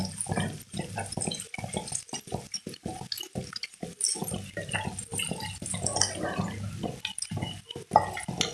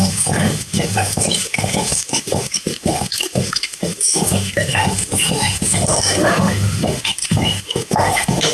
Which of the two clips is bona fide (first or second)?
first